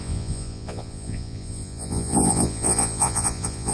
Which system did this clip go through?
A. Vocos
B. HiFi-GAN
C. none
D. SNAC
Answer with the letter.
A